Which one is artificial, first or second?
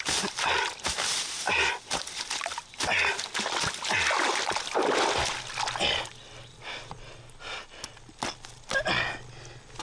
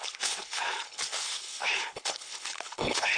second